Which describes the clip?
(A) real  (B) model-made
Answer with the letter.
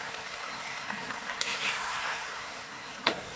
B